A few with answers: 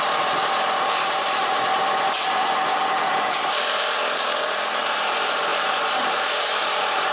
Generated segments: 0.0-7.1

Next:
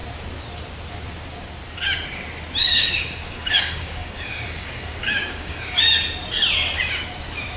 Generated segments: 2.6-5.8

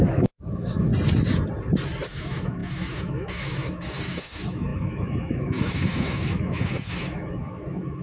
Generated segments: 0.0-0.9; 2.1-8.0

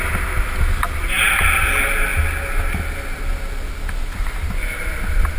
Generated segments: none

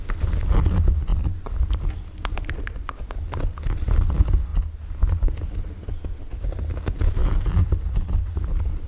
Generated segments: none